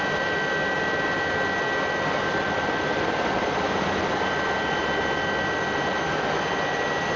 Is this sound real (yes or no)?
yes